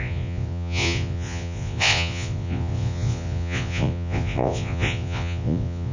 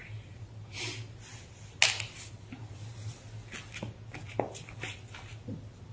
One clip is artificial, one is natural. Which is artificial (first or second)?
first